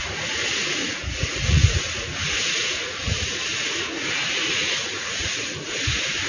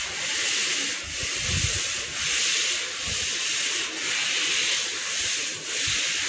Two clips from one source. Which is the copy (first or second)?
first